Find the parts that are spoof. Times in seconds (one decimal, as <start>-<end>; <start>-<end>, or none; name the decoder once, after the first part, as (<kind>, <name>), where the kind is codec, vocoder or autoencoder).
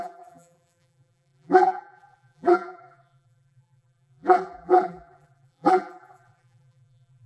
0.0-7.3 (vocoder, BigVGAN v2)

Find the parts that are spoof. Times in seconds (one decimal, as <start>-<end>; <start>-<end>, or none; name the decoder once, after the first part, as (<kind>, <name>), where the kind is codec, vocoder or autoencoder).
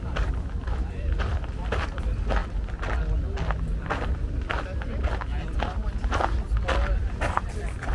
0.0-2.4 (vocoder, BigVGAN v2); 6.9-7.9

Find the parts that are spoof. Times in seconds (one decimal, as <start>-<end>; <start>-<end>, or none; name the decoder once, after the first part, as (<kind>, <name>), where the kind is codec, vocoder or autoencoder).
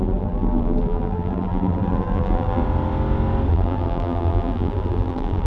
0.0-2.6 (vocoder, BigVGAN v2); 3.5-5.5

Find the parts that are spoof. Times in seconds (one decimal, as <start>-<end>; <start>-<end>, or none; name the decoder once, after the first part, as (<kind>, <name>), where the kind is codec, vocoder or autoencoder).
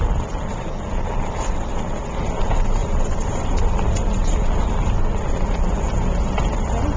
2.8-3.5 (vocoder, BigVGAN v2)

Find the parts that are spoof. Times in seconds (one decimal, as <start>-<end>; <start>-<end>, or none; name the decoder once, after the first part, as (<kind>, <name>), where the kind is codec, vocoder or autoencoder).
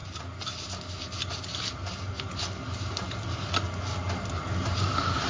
0.0-0.5 (vocoder, BigVGAN v2)